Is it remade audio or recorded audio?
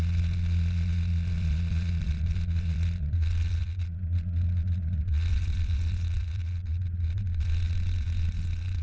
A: remade